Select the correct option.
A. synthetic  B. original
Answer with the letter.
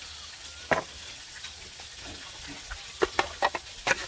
B